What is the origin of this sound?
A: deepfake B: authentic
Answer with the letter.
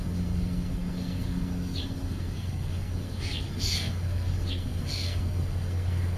A